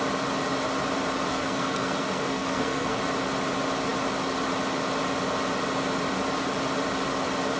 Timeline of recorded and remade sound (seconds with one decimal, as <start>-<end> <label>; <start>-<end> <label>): 0.0-1.3 recorded; 1.3-3.0 remade; 3.0-7.6 recorded